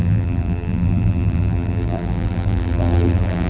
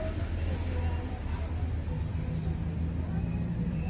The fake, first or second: first